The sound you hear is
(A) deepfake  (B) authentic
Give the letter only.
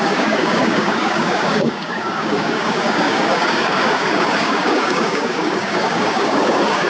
A